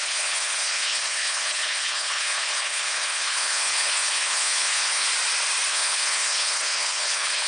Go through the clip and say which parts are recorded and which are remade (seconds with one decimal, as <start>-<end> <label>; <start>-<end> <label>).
0.0-5.1 remade; 5.1-5.7 recorded; 5.7-7.5 remade